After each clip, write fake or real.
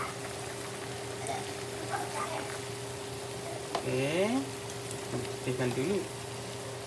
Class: real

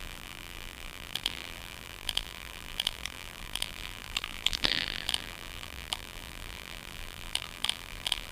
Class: fake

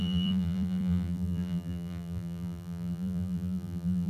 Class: fake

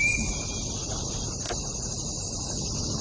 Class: real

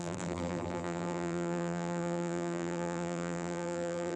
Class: fake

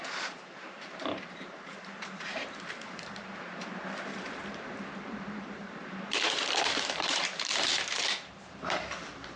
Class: fake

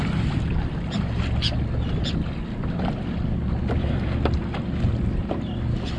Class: real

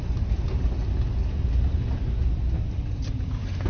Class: real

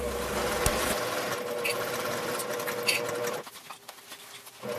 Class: real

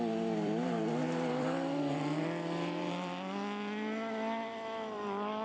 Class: fake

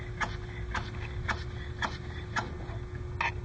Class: real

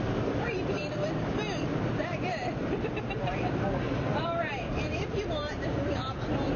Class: fake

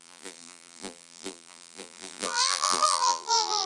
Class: fake